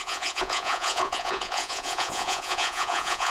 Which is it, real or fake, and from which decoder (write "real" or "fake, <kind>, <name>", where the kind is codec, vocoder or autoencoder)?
fake, vocoder, Vocos